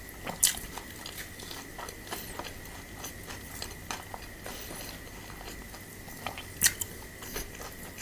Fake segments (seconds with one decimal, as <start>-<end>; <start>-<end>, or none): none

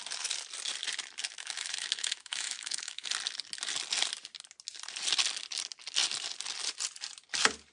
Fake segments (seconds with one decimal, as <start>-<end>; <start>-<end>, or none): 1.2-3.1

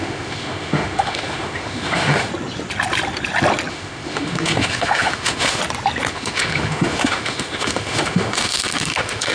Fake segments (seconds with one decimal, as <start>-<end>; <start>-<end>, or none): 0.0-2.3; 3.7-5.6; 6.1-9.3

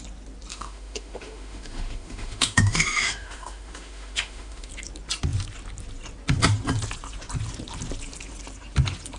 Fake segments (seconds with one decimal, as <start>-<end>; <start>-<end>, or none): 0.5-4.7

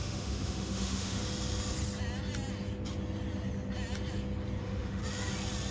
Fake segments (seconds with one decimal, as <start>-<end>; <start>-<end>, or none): 0.0-1.2; 4.6-5.0

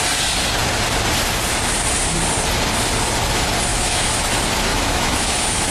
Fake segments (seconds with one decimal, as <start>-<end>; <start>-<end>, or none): 3.7-4.3; 4.7-5.7

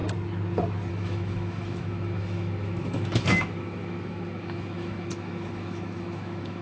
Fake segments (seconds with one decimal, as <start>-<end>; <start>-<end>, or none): 0.9-6.6